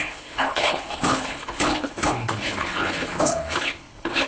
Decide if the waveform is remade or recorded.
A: remade